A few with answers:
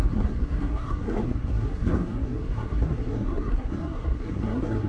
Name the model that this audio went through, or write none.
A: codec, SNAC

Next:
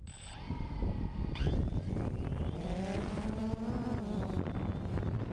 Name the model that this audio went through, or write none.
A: vocoder, BigVGAN v2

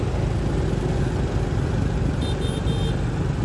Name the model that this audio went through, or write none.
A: none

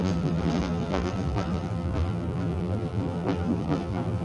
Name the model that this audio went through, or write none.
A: vocoder, BigVGAN v2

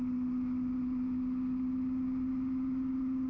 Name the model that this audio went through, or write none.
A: none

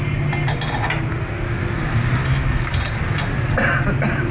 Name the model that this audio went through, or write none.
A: none